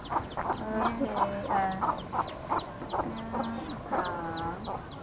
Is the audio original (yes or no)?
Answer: yes